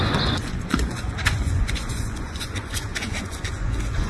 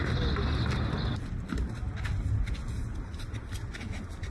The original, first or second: second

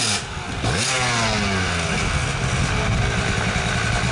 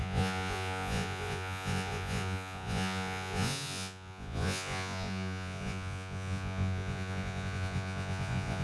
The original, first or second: first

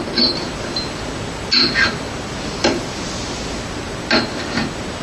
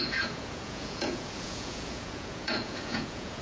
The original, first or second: first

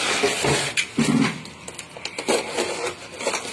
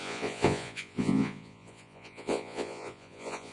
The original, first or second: first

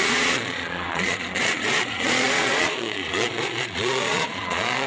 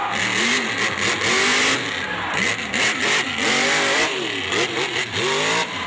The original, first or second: second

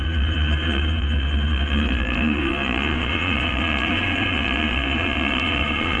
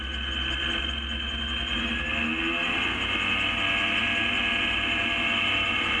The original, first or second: second